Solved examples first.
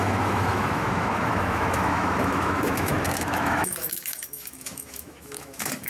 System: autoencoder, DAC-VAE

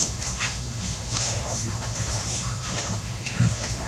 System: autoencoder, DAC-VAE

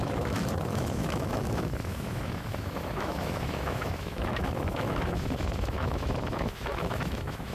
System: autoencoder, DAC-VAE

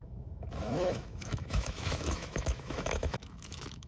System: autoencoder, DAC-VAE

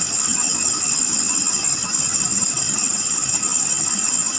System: none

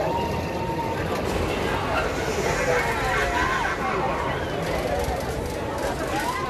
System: none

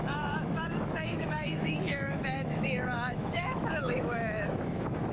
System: autoencoder, DAC-VAE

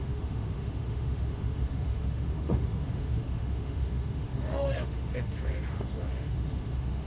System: autoencoder, DAC-VAE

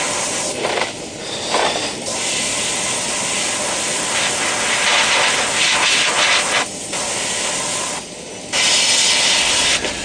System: none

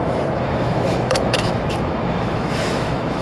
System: autoencoder, DAC-VAE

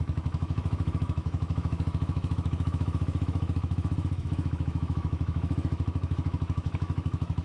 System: autoencoder, DAC-VAE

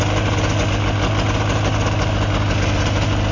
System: none